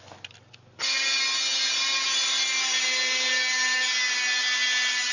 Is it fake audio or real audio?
real